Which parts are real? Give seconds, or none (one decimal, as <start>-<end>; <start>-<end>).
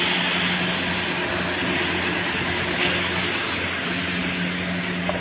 0.0-5.2